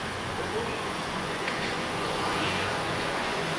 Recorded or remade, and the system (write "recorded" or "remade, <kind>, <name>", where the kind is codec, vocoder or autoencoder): remade, vocoder, Vocos